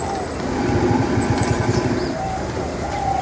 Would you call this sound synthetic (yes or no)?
no